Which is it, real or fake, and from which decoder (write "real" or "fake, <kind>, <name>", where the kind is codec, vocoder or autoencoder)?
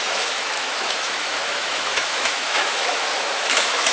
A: fake, autoencoder, DAC-VAE